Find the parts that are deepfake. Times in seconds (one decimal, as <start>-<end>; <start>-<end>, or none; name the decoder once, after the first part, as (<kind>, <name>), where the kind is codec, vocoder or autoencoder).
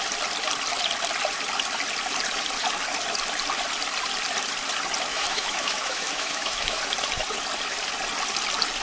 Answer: 5.1-6.8 (autoencoder, DAC-VAE)